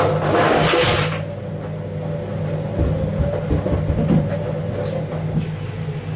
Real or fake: real